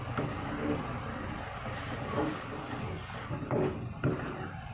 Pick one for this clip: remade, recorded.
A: recorded